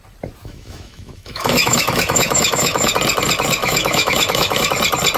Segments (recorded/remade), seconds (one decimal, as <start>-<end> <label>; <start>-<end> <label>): 0.0-0.4 recorded; 0.4-2.9 remade; 2.9-3.6 recorded; 3.6-4.7 remade; 4.7-5.2 recorded